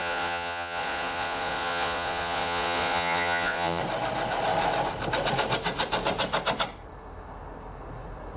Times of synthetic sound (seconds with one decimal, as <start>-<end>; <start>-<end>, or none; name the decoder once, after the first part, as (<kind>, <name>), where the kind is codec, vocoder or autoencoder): 0.0-3.8 (vocoder, Vocos)